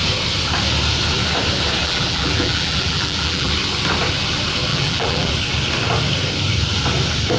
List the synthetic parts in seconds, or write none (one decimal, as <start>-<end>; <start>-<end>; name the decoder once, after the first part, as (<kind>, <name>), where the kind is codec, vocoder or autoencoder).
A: 1.8-3.5 (vocoder, BigVGAN v2); 4.7-5.3